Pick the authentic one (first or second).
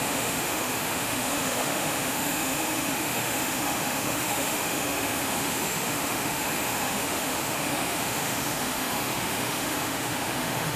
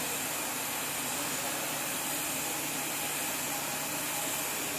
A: second